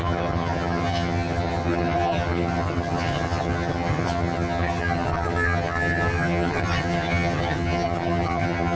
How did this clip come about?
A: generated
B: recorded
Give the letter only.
A